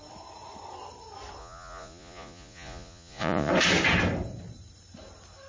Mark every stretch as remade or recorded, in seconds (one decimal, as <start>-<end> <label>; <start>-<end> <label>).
0.0-1.4 recorded; 1.4-3.5 remade; 3.5-5.5 recorded